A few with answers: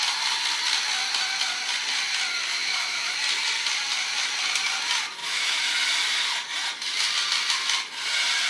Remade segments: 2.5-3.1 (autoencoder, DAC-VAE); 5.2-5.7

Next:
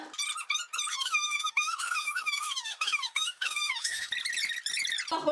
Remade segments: 0.9-4.1 (autoencoder, DAC-VAE)

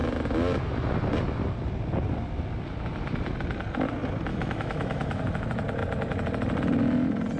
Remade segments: 4.3-5.2 (autoencoder, DAC-VAE)

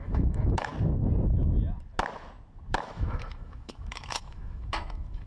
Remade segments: 0.0-0.7 (autoencoder, DAC-VAE); 2.8-5.3

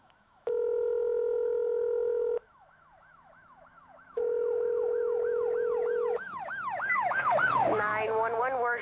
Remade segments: 0.0-7.9 (autoencoder, DAC-VAE); 8.4-8.8